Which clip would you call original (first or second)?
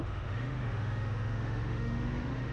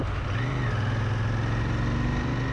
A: second